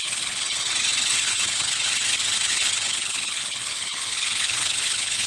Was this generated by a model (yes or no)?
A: yes